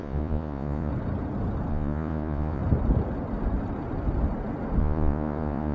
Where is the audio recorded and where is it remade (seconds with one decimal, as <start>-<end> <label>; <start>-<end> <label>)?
0.0-0.9 remade; 0.9-1.7 recorded; 1.7-2.6 remade; 2.6-4.8 recorded; 4.8-5.7 remade